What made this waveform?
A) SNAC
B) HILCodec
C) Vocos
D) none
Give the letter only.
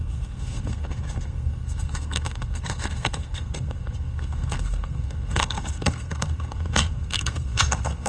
A